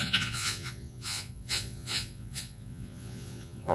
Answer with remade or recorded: remade